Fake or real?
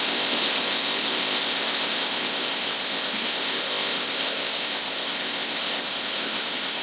fake